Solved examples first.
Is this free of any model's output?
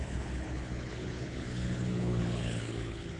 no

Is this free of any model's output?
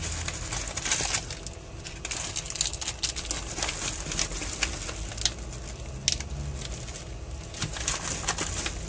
yes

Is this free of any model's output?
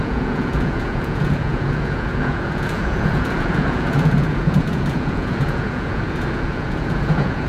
no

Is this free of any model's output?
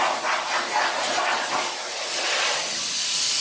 yes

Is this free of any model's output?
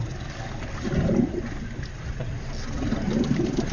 yes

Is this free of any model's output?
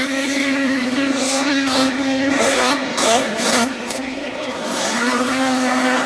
no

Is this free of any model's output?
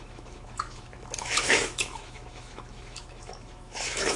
no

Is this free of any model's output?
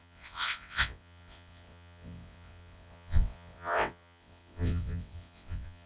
no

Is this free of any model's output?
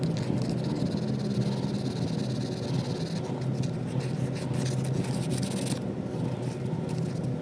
yes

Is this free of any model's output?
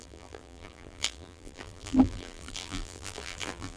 no